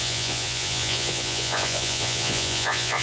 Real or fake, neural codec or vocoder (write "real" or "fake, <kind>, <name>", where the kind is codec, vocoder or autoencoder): fake, vocoder, Vocos